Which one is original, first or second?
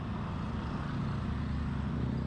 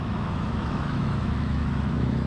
first